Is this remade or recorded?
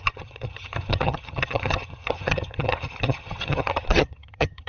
remade